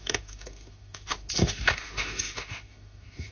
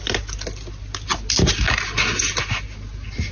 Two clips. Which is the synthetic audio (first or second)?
first